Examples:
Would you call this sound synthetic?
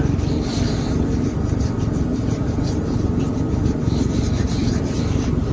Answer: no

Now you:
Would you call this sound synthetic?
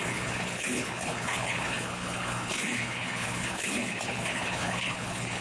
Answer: yes